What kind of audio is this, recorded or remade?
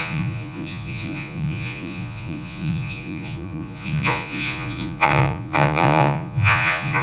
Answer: remade